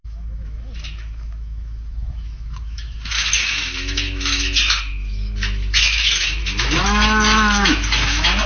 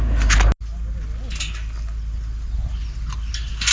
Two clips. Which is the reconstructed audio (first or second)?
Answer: first